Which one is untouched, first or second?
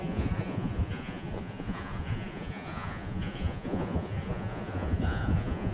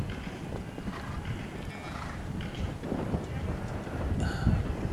second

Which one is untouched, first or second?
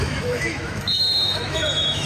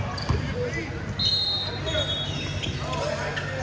second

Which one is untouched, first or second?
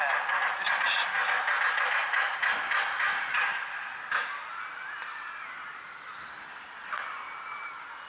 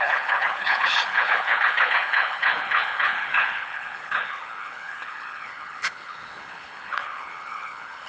first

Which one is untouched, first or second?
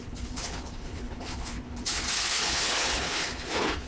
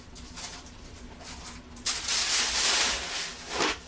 second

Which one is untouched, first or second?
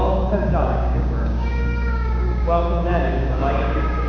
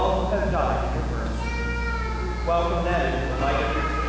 second